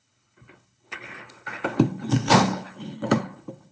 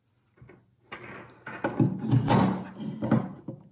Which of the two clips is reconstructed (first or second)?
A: first